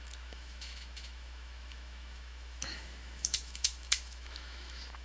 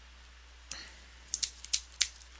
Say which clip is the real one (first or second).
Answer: second